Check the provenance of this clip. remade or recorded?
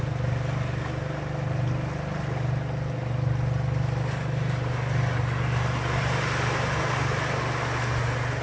recorded